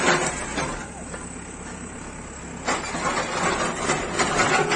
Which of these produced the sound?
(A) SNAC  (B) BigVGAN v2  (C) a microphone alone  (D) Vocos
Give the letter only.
C